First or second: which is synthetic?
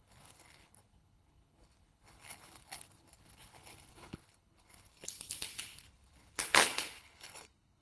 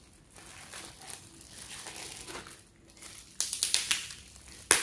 first